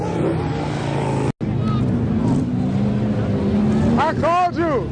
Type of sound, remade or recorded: recorded